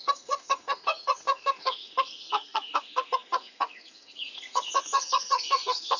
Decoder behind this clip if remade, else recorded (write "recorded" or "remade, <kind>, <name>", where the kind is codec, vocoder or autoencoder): remade, codec, SNAC